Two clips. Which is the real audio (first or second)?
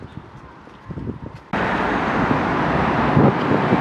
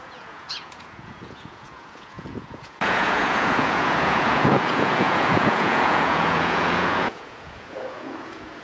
first